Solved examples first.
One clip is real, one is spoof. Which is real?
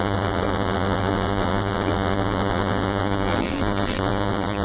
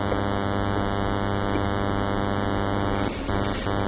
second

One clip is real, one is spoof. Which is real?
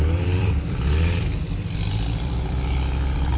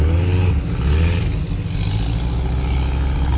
second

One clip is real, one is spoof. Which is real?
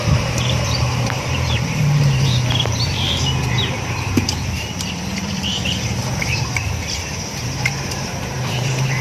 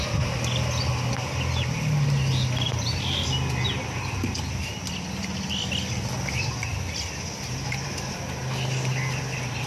second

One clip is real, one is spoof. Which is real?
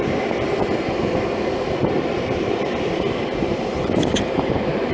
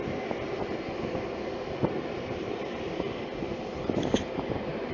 second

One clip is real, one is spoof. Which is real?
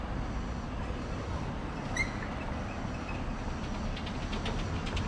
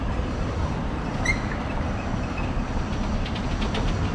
first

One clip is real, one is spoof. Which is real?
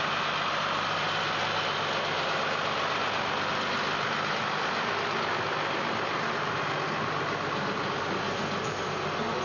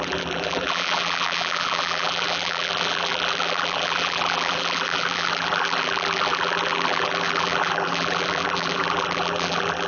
first